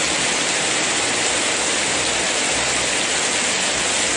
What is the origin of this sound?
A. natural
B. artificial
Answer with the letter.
A